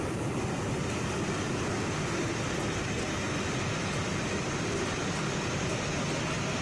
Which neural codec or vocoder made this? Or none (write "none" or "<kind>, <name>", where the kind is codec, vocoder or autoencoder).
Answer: none